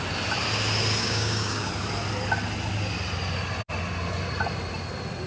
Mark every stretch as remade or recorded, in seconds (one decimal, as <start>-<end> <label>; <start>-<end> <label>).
0.0-1.0 recorded; 1.0-1.7 remade; 1.7-5.3 recorded